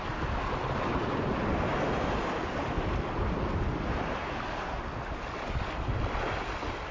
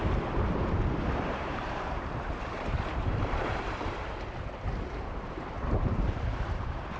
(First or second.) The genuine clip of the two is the first